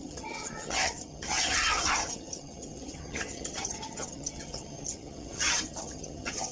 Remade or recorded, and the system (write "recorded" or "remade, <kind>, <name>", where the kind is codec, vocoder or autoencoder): remade, vocoder, HiFi-GAN